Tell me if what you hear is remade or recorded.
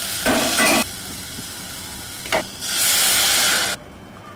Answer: recorded